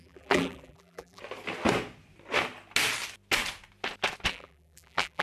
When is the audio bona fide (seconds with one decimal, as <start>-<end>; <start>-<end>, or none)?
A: 1.2-4.3